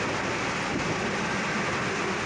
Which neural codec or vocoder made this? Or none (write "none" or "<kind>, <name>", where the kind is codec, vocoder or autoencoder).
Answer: none